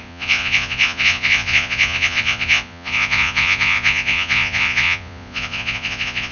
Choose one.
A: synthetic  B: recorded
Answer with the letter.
A